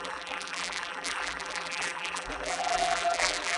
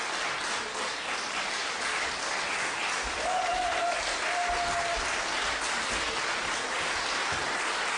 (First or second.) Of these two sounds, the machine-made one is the first